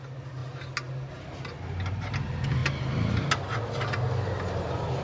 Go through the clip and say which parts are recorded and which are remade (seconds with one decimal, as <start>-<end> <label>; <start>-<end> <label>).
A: 0.0-5.0 recorded